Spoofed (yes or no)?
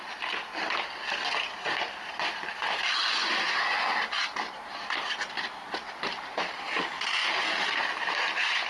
no